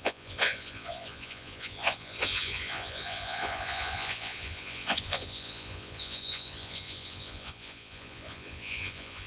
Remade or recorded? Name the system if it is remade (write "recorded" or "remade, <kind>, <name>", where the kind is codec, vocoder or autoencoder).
remade, vocoder, Vocos